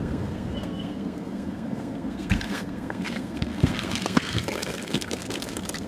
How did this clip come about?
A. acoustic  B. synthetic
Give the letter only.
B